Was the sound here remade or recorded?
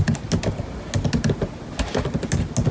recorded